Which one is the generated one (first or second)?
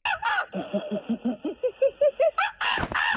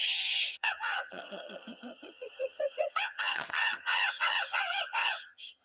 second